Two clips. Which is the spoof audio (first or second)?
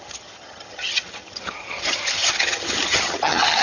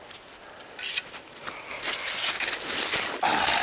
first